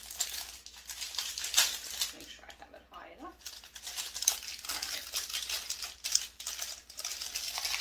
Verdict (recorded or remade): recorded